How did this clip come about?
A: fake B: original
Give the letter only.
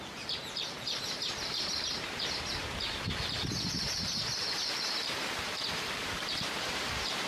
A